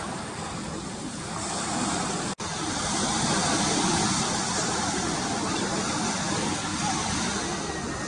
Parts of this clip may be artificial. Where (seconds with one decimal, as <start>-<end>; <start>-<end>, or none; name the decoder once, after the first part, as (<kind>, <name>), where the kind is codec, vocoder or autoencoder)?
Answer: none